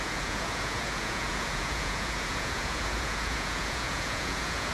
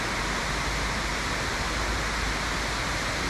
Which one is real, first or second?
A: second